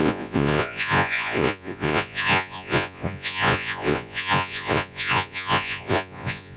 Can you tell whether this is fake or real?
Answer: fake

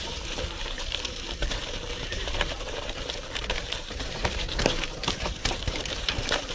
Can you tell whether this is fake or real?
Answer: fake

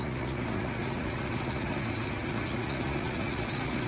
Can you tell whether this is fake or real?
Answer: fake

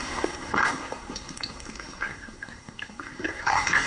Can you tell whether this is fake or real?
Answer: fake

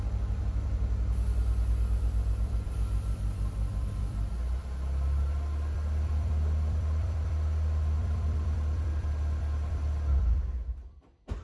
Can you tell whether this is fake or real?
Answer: fake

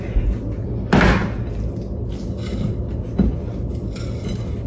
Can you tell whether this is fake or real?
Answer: real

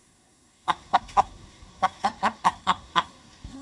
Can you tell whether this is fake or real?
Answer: fake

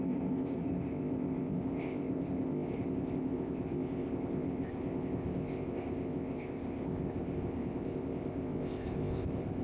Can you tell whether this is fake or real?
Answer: fake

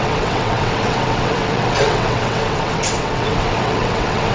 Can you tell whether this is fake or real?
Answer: fake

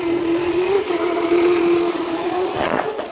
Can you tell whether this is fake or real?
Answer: fake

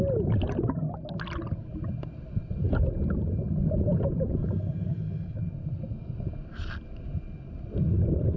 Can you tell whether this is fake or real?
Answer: real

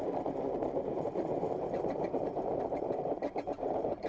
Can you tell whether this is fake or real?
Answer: fake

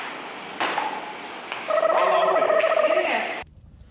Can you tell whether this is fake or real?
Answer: real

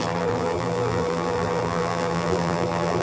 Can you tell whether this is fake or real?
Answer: fake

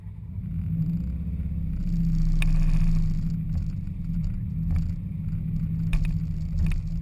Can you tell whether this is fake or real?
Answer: real